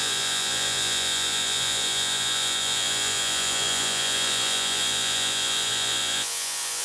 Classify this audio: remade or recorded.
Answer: remade